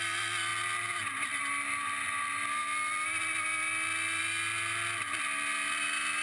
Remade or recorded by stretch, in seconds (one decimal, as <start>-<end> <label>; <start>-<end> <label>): 0.0-6.2 recorded